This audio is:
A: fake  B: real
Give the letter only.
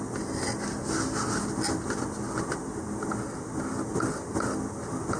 B